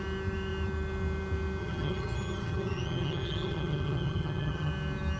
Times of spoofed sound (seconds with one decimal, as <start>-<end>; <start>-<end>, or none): 1.6-4.7